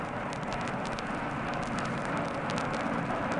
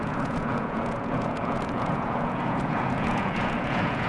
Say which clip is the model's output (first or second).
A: second